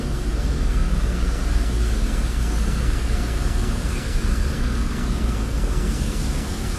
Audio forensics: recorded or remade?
remade